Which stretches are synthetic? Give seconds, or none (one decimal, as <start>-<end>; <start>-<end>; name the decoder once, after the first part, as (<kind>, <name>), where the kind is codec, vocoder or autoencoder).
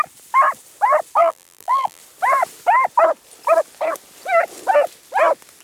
1.2-2.0 (vocoder, BigVGAN v2)